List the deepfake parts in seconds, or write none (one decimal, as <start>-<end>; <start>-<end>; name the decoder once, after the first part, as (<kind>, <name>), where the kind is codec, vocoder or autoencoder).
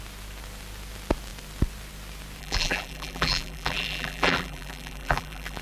2.4-5.6 (vocoder, BigVGAN v2)